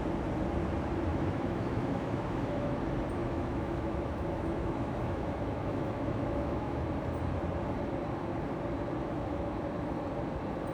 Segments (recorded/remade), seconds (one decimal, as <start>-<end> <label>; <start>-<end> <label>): 0.0-1.1 recorded; 1.1-2.8 remade; 2.8-3.2 recorded; 3.2-6.8 remade; 6.8-9.0 recorded; 9.0-9.6 remade; 9.6-10.7 recorded